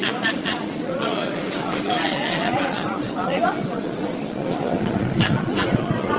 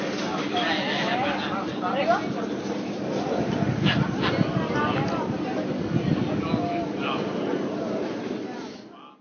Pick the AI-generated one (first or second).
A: first